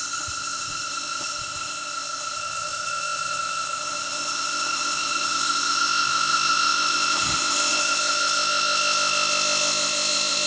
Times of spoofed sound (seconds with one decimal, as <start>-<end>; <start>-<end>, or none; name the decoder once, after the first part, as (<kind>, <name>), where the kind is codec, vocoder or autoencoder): 0.0-10.5 (codec, ZipCodec)